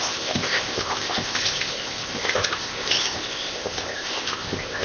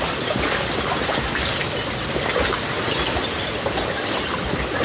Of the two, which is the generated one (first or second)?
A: first